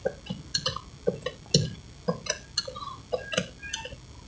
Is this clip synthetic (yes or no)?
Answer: no